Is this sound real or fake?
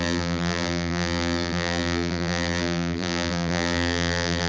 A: fake